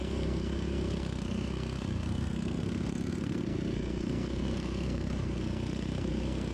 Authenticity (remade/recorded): remade